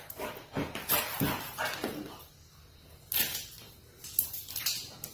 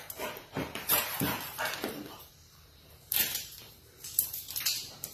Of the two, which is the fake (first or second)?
second